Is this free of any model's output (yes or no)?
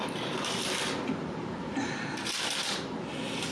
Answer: yes